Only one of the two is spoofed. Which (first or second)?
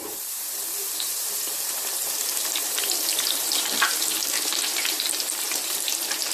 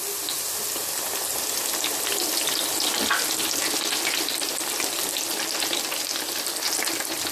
first